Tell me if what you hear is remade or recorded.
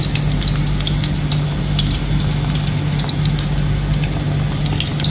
recorded